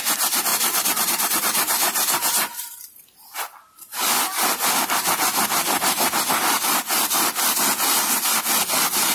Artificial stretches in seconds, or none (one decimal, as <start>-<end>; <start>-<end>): 0.5-3.0